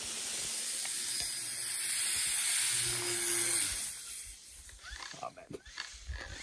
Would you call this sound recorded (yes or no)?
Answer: yes